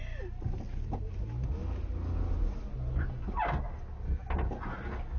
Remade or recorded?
recorded